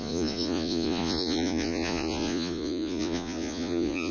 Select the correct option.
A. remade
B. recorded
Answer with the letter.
A